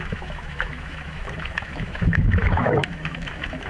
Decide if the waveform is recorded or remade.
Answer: remade